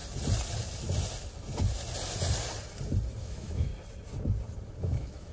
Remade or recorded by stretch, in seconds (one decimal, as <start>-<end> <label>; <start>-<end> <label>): 0.0-3.2 recorded; 3.2-3.7 remade; 3.7-4.8 recorded; 4.8-5.3 remade